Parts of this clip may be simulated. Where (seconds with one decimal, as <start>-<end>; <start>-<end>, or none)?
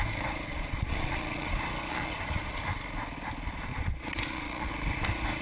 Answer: 0.5-1.5; 1.9-2.6; 3.7-4.7